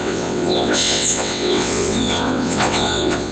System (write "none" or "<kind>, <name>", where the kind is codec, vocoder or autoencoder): vocoder, WaveNeXt